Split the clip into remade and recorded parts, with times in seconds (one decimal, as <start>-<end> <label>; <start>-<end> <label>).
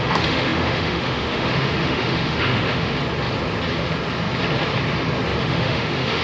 0.0-3.0 remade; 3.0-5.4 recorded; 5.4-6.2 remade